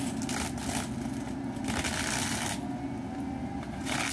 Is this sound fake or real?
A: real